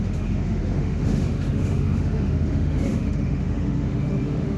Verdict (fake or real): fake